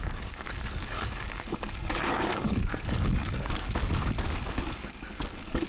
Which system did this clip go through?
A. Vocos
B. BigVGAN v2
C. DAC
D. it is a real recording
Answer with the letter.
C